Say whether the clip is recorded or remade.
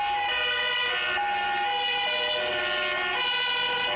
recorded